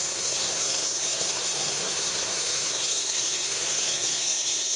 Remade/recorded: remade